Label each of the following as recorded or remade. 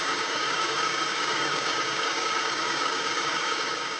remade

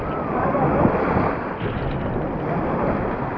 recorded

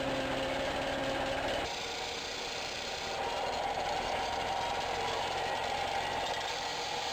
recorded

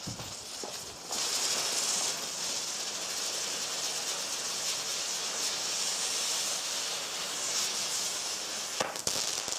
recorded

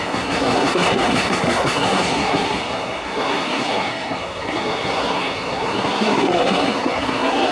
remade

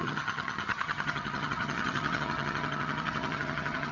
remade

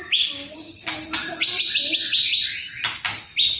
recorded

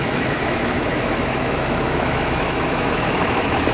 remade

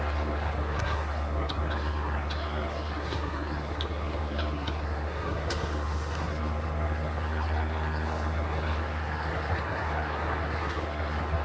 remade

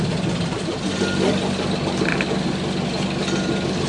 recorded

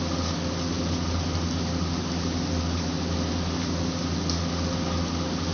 recorded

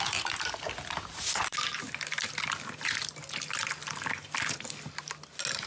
recorded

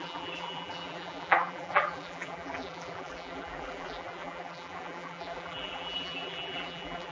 remade